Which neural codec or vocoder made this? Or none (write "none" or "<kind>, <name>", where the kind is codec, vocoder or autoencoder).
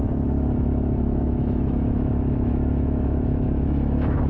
autoencoder, DAC-VAE